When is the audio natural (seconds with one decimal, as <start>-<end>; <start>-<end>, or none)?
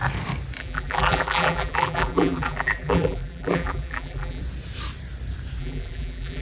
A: 0.0-0.6; 4.4-5.6